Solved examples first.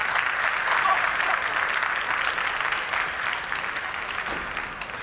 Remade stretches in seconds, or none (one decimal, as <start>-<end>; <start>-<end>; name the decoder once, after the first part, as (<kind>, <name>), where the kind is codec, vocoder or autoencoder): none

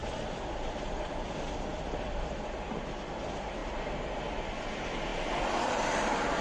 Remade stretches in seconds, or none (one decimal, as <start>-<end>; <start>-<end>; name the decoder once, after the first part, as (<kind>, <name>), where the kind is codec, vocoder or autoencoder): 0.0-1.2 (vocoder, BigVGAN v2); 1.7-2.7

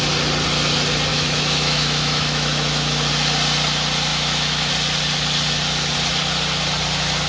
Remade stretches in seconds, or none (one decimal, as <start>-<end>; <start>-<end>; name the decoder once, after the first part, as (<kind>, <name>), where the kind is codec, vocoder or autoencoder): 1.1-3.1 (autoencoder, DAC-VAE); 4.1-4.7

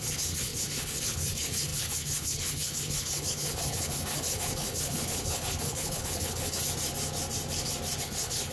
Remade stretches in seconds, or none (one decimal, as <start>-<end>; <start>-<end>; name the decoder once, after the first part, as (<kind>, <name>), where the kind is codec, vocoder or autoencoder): 0.0-6.6 (codec, HILCodec); 8.0-8.5

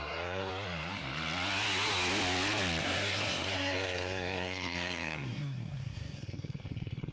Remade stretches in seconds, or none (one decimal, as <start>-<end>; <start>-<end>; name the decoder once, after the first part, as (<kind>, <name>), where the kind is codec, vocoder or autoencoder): 0.0-0.5 (codec, SNAC); 2.8-7.1

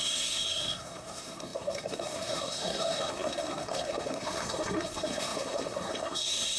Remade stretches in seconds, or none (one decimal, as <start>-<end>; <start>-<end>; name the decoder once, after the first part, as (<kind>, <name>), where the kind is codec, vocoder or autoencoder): 0.0-6.6 (codec, SNAC)